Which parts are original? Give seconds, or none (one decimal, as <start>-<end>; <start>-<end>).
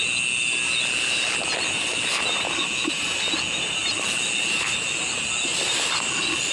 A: 0.0-6.5